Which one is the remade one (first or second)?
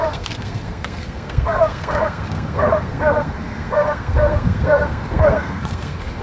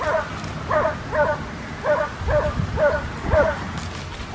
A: first